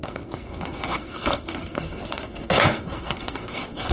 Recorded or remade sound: remade